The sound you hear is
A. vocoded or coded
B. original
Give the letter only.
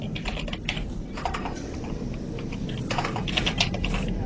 B